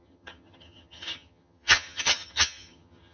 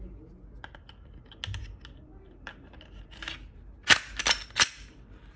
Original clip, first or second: second